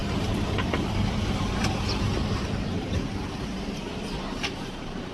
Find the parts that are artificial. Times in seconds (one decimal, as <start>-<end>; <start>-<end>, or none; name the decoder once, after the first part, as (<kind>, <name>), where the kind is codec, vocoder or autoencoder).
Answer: 0.0-5.1 (vocoder, BigVGAN v2)